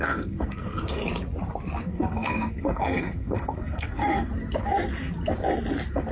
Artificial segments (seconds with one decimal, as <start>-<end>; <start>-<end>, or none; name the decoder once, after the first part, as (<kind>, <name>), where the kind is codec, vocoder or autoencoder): 0.0-1.0 (codec, SNAC); 1.8-4.3